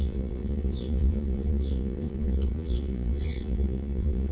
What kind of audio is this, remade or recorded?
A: remade